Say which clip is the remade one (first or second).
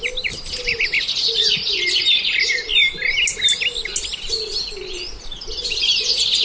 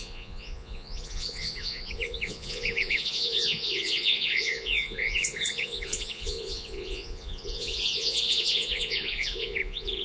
second